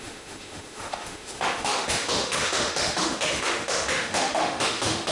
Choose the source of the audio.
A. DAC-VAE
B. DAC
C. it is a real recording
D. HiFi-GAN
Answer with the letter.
A